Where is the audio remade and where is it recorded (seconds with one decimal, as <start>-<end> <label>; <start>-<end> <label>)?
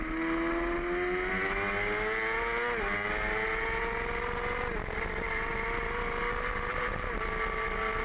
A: 0.0-8.0 recorded